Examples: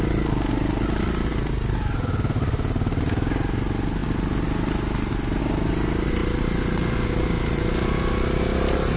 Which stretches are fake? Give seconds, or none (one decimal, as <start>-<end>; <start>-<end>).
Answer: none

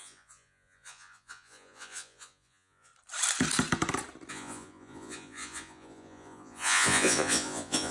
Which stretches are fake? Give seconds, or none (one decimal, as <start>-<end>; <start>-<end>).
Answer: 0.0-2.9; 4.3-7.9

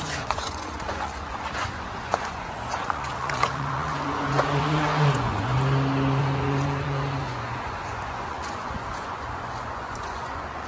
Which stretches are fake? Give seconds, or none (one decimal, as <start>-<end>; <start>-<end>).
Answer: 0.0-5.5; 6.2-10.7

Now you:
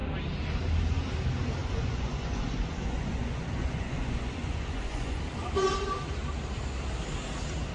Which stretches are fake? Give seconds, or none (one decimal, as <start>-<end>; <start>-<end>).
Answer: 1.6-5.2